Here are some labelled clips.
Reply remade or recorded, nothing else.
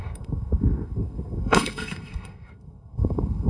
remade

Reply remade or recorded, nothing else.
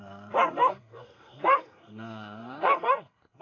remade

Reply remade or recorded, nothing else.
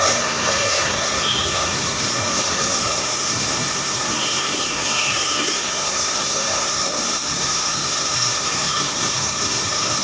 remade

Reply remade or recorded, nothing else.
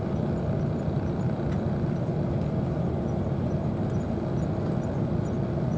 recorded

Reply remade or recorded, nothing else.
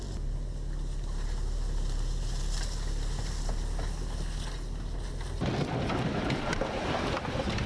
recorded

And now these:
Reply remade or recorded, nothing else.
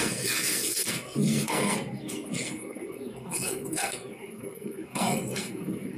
remade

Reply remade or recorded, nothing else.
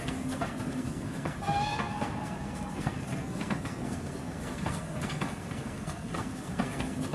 remade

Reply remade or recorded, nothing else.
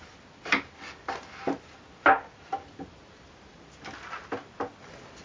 recorded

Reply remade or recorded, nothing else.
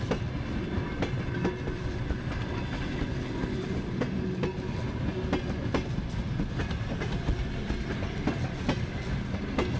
recorded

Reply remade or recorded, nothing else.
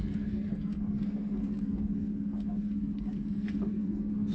remade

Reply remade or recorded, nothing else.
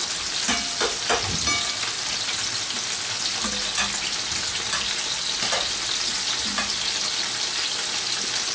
recorded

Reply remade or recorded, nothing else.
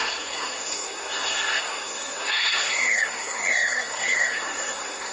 remade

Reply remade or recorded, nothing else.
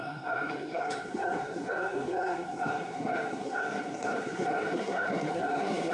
remade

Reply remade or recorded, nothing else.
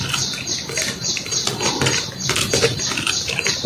recorded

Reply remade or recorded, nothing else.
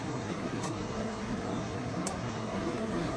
remade